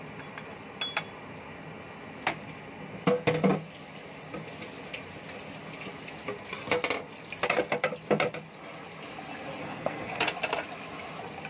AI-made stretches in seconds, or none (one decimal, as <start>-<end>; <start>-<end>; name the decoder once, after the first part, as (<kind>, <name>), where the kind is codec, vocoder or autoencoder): 9.6-10.2 (codec, SNAC)